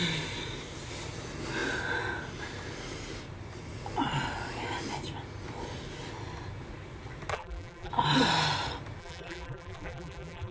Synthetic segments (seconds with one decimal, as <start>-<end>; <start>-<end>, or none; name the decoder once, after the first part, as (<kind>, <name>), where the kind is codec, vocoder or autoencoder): 7.3-7.9 (vocoder, BigVGAN v2); 9.0-10.5